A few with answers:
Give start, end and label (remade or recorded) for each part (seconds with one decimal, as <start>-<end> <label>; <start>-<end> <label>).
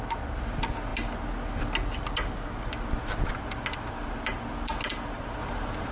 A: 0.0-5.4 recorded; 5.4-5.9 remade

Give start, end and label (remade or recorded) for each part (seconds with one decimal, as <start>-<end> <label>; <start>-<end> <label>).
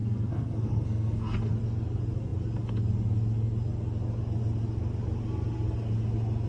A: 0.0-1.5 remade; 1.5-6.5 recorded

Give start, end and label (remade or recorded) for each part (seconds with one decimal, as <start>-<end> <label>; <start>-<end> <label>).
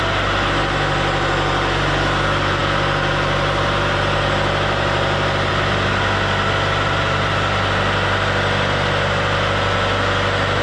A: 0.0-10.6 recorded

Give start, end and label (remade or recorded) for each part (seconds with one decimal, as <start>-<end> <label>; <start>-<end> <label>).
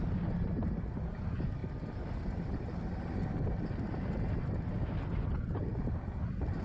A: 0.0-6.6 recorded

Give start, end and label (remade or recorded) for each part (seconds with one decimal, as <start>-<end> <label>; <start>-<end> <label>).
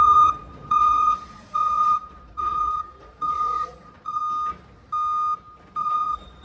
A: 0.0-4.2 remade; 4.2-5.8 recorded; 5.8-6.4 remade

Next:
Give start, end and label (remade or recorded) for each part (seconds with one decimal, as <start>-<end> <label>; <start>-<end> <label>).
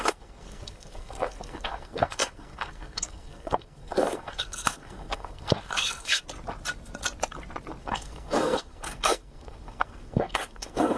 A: 0.0-6.2 remade; 6.2-7.8 recorded; 7.8-11.0 remade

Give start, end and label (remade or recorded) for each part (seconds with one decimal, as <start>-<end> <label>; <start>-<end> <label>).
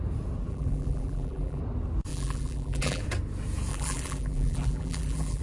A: 0.0-0.5 recorded; 0.5-1.6 remade; 1.6-2.1 recorded; 2.1-3.0 remade; 3.0-3.7 recorded; 3.7-5.4 remade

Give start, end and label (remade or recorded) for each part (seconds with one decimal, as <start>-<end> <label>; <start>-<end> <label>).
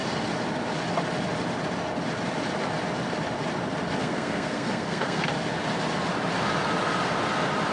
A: 0.0-4.0 recorded; 4.0-5.3 remade; 5.3-7.7 recorded